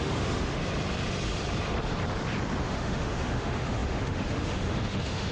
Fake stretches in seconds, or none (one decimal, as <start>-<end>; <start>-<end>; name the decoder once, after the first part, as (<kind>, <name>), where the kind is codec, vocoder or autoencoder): 0.0-0.6 (autoencoder, DAC-VAE); 2.6-5.3